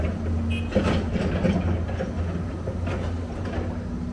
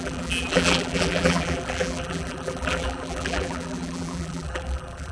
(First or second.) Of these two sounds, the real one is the first